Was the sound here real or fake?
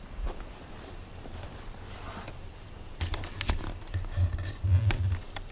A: real